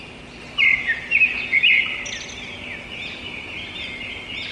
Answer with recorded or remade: recorded